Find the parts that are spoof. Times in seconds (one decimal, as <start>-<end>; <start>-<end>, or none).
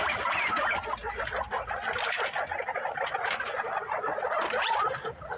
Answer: 0.0-5.4